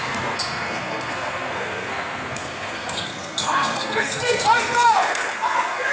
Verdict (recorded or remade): remade